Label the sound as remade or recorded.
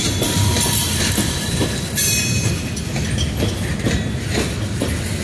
recorded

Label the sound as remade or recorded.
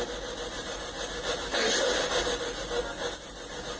recorded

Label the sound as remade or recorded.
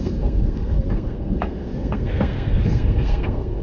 remade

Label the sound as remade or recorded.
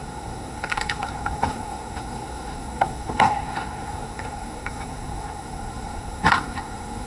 remade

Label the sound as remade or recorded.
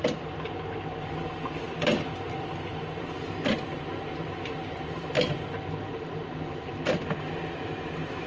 recorded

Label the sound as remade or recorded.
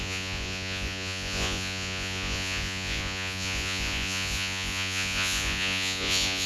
remade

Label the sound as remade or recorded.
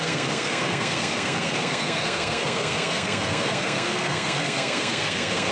remade